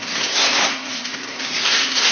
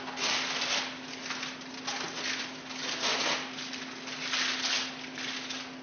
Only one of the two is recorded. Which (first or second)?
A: second